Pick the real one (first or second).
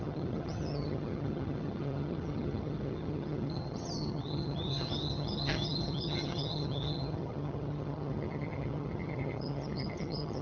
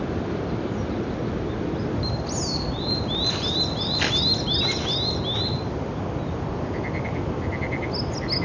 second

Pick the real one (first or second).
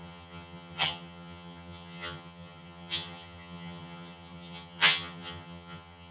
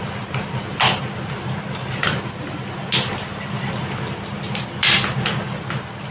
second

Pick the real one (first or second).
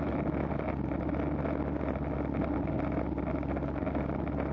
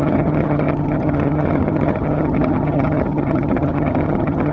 first